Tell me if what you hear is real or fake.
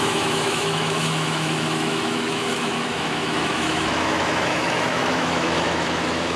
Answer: fake